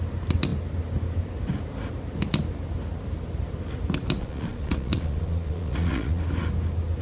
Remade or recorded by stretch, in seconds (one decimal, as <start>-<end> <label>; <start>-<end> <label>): 0.0-4.2 recorded; 4.2-6.2 remade; 6.2-7.0 recorded